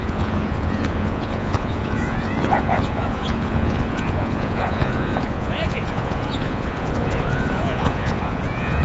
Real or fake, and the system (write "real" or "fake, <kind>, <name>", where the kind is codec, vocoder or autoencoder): fake, vocoder, Vocos